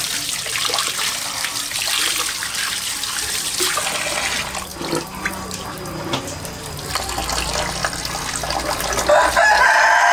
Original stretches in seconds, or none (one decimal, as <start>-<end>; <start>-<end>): 0.0-10.1